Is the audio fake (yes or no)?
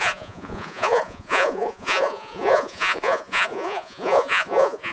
yes